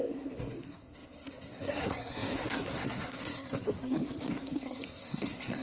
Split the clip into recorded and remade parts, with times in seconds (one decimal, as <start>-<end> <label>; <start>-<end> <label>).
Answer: 0.0-5.6 remade